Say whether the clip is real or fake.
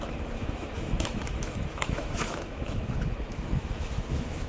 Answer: fake